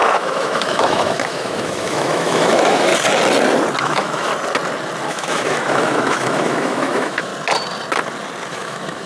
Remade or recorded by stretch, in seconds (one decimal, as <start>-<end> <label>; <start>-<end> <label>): 0.0-2.9 remade; 2.9-3.8 recorded; 3.8-4.3 remade; 4.3-5.1 recorded; 5.1-7.3 remade; 7.3-8.5 recorded; 8.5-9.1 remade

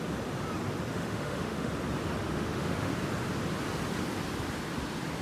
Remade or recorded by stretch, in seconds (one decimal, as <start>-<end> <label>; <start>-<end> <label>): 0.0-0.9 recorded; 0.9-1.7 remade; 1.7-2.2 recorded; 2.2-2.9 remade; 2.9-5.2 recorded

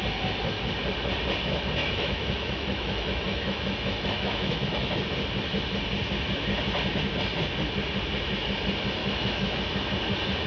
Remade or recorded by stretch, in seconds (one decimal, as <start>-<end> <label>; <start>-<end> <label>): 0.0-1.8 recorded; 1.8-5.0 remade; 5.0-9.0 recorded; 9.0-9.6 remade; 9.6-10.5 recorded